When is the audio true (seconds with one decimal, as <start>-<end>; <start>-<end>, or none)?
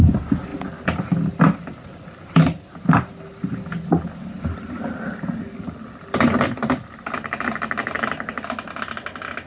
0.0-9.5